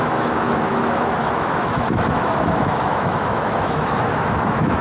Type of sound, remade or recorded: remade